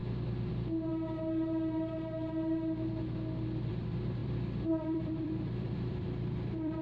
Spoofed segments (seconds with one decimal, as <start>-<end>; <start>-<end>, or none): 0.5-0.9; 3.7-6.8